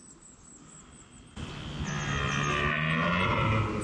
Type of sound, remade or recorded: recorded